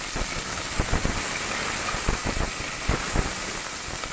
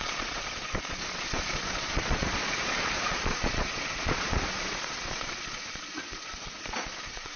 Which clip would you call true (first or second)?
first